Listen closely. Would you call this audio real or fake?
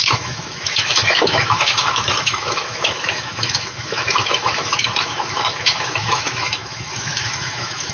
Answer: fake